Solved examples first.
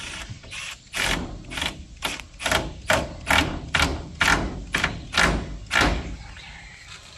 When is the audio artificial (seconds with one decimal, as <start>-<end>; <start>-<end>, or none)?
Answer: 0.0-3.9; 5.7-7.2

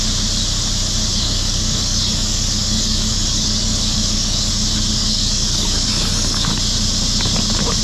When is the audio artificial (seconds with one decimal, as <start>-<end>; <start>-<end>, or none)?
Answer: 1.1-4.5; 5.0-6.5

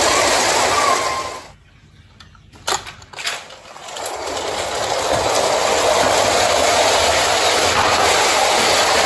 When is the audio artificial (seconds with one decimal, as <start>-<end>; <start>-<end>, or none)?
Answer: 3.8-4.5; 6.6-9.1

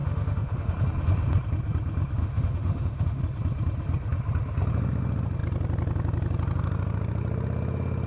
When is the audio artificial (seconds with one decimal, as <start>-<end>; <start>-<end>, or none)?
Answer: 0.0-0.7; 2.2-3.2

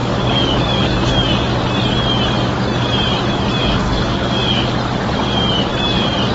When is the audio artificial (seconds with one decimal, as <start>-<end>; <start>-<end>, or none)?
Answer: 0.0-1.1; 3.6-4.4

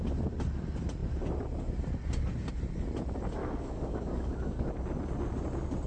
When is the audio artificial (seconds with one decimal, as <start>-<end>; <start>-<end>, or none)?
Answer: 3.4-4.7

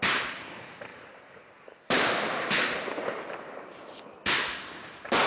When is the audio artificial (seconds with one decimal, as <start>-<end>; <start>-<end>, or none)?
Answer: 0.9-4.1

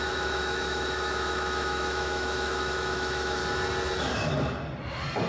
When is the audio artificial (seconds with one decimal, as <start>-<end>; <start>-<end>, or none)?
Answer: 0.0-3.4